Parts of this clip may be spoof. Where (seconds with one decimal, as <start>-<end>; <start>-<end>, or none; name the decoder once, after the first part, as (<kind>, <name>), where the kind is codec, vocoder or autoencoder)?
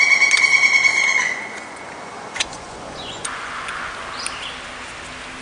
0.9-3.9 (vocoder, Vocos)